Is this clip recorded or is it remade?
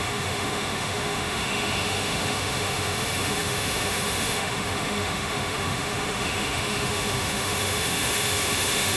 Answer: remade